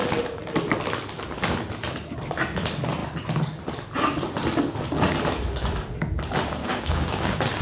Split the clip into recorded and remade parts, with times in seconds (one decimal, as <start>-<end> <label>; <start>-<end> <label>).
0.0-6.6 recorded; 6.6-7.6 remade